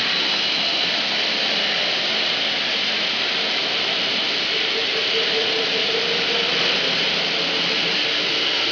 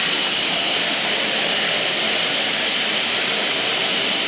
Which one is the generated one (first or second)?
second